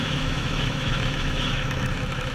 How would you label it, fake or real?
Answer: fake